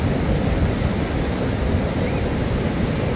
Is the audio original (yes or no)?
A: yes